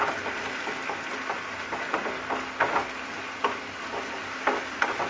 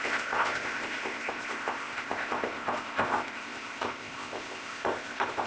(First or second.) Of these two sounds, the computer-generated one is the second